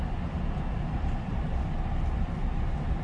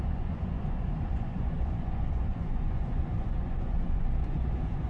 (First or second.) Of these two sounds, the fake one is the second